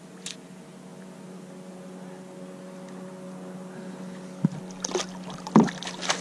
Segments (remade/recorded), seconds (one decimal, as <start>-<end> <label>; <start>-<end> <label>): 0.0-6.2 recorded